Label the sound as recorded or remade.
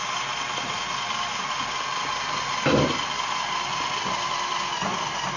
recorded